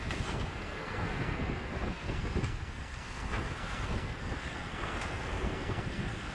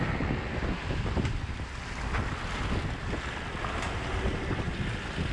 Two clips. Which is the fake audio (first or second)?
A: first